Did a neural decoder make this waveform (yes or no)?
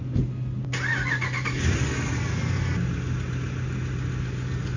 no